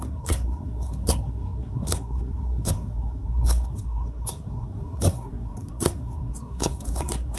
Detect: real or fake fake